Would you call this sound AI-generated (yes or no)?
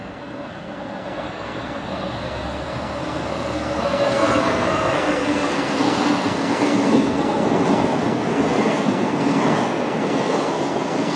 yes